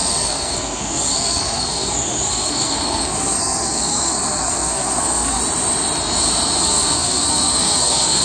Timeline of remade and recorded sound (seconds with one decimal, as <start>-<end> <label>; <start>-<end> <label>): 0.0-5.4 remade; 5.4-6.6 recorded; 6.6-8.2 remade